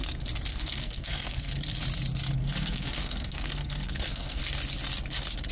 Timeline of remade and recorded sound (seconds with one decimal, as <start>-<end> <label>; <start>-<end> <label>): 0.0-0.5 recorded; 0.5-1.5 remade; 1.5-2.4 recorded; 2.4-4.4 remade; 4.4-5.5 recorded